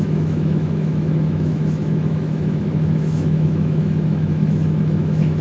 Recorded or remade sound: remade